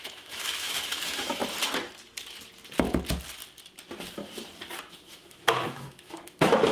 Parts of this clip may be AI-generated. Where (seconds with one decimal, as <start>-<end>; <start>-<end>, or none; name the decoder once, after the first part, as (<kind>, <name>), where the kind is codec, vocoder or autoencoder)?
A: 0.0-1.4 (autoencoder, DAC-VAE); 4.9-6.7